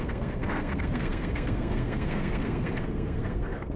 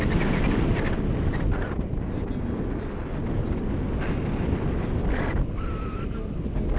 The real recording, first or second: second